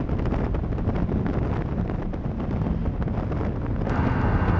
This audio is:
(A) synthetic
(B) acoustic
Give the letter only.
B